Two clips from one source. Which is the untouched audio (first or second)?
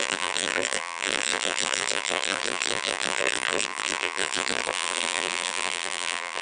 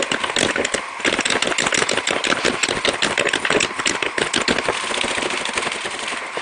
second